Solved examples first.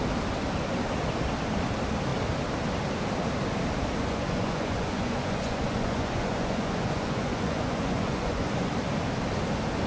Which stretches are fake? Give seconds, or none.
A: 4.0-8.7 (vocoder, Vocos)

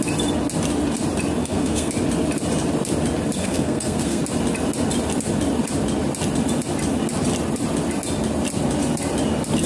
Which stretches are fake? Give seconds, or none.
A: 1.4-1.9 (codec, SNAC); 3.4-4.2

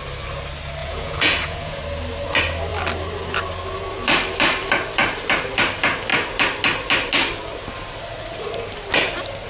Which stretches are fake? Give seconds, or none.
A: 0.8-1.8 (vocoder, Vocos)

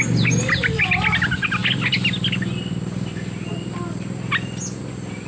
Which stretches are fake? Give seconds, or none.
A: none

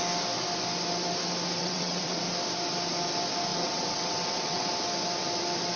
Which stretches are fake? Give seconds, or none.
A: 1.6-2.2 (vocoder, WaveNeXt); 3.5-4.7

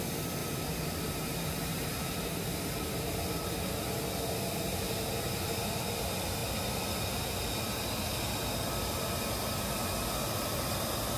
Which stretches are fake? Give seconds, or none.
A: 0.4-1.1 (vocoder, BigVGAN v2); 1.7-3.1

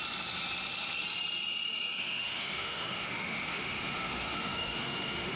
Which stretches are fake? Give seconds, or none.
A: 2.0-5.4 (autoencoder, DAC-VAE)

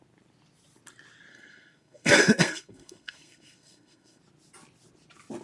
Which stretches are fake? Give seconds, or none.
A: 1.3-4.2 (codec, SNAC)